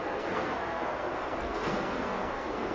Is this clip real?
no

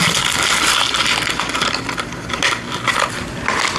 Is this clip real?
yes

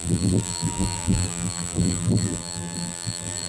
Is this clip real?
no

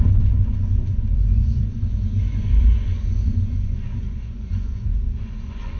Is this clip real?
no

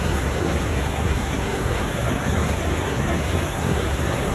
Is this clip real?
no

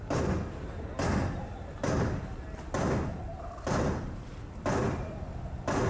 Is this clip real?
no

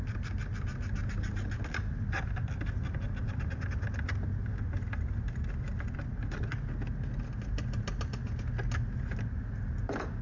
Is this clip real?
yes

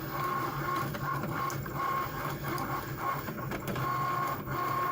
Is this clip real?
yes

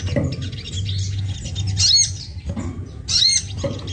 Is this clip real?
yes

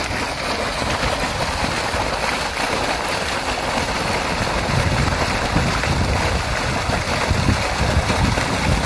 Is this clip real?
yes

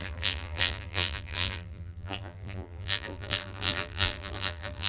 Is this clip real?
no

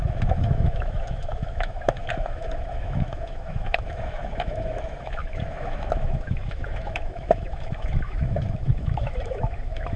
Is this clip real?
no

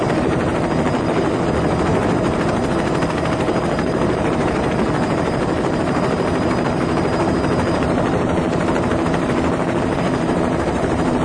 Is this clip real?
no